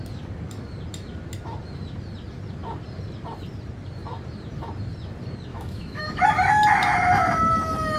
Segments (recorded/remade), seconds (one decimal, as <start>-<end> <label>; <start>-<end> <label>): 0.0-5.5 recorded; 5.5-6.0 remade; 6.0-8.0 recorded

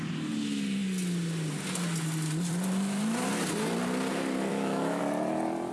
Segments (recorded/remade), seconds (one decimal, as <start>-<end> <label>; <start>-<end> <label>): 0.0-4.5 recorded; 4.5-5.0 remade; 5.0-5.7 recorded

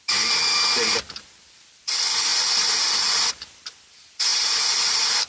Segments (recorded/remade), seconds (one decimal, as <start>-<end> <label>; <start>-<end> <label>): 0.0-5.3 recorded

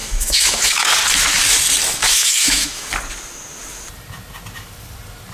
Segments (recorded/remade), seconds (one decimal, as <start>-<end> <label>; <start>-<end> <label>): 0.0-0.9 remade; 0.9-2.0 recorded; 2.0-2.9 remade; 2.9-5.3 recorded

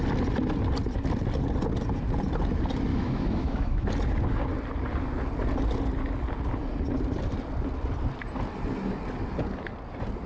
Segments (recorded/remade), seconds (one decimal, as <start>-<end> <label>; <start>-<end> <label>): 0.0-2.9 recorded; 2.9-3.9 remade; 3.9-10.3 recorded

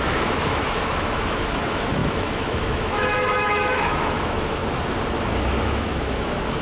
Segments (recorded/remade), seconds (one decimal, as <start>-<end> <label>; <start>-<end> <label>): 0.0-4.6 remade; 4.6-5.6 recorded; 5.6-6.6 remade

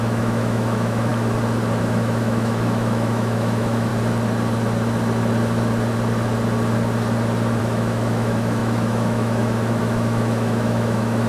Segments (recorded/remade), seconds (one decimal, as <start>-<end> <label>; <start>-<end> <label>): 0.0-1.1 remade; 1.1-1.8 recorded; 1.8-3.9 remade; 3.9-7.6 recorded; 7.6-11.3 remade

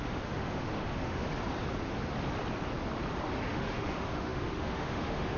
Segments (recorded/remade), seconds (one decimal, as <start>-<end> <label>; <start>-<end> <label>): 0.0-1.3 remade; 1.3-3.3 recorded; 3.3-5.4 remade